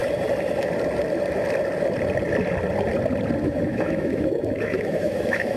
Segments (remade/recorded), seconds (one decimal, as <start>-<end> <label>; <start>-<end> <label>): 0.0-3.4 recorded; 3.4-5.6 remade

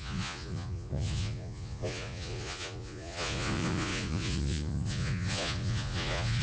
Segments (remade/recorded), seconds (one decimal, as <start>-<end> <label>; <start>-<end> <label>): 0.0-6.4 remade

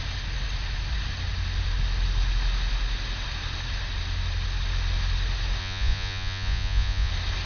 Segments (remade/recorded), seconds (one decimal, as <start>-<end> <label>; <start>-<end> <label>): 0.0-5.6 recorded; 5.6-7.1 remade; 7.1-7.5 recorded

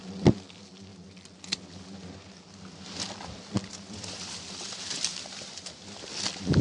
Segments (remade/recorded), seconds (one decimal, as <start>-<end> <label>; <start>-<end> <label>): 0.0-0.9 remade; 0.9-3.6 recorded; 3.6-6.6 remade

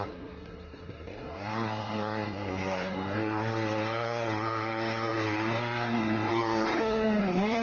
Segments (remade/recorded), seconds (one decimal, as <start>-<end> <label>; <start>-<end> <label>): 0.0-7.6 remade